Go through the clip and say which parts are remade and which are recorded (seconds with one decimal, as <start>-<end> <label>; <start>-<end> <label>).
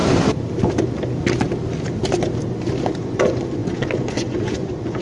0.0-3.0 recorded; 3.0-5.0 remade